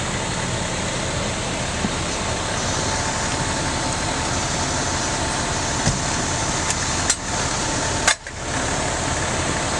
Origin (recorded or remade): recorded